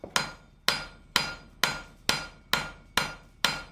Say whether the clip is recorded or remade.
recorded